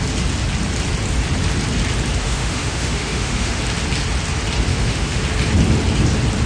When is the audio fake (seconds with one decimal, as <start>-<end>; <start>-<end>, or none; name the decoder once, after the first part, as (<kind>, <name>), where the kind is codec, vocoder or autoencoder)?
2.2-3.6 (autoencoder, DAC-VAE); 4.7-5.2